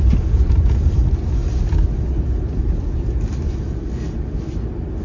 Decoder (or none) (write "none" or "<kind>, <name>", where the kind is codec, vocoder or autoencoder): none